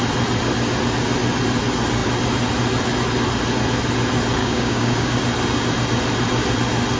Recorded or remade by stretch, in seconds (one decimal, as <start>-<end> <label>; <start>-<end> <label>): 0.0-4.4 recorded; 4.4-5.1 remade; 5.1-7.0 recorded